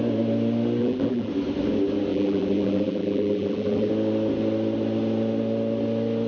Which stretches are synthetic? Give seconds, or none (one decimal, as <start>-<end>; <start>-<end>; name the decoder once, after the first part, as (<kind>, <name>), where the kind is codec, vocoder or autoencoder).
0.8-1.3 (vocoder, BigVGAN v2); 2.1-3.9